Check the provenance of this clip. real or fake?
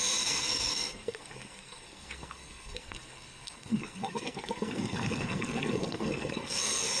fake